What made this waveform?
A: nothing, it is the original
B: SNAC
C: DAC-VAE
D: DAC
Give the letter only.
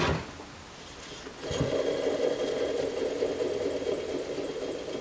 A